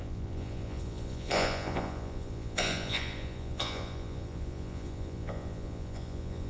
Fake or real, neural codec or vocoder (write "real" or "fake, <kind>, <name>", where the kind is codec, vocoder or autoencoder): fake, vocoder, Vocos